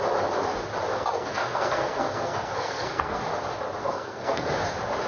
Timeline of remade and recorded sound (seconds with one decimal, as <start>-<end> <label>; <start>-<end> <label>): 0.0-0.9 recorded; 0.9-3.2 remade; 3.2-3.8 recorded; 3.8-4.5 remade; 4.5-5.1 recorded